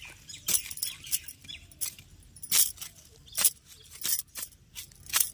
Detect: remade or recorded recorded